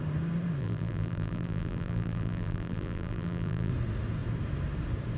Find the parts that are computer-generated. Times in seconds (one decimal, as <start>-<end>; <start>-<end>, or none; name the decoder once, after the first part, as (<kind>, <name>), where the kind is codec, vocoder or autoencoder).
0.6-3.7 (vocoder, BigVGAN v2)

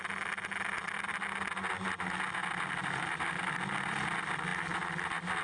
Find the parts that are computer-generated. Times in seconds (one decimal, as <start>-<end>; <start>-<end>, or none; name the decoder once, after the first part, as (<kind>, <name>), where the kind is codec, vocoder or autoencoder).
none

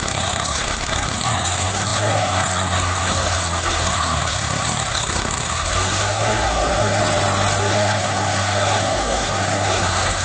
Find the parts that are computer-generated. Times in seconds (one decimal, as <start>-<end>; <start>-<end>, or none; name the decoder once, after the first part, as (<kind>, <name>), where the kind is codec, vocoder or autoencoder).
0.0-7.0 (codec, SNAC); 7.6-10.2